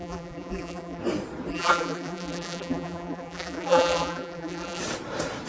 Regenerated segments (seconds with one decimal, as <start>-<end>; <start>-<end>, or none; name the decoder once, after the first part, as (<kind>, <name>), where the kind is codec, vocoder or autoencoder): 0.0-1.0 (vocoder, BigVGAN v2); 1.5-4.8